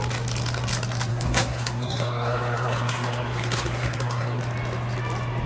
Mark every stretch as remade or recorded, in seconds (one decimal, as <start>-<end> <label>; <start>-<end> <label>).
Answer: 0.0-1.1 recorded; 1.1-4.4 remade; 4.4-5.5 recorded